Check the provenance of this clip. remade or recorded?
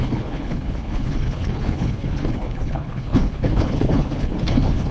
remade